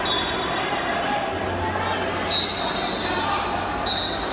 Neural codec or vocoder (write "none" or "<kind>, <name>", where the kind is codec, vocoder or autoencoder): none